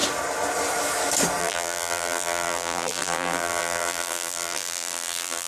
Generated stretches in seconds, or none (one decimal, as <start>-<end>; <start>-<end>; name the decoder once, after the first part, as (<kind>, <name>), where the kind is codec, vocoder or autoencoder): 1.4-5.5 (vocoder, BigVGAN v2)